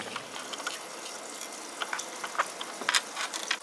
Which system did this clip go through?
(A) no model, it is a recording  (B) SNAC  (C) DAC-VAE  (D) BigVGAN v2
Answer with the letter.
A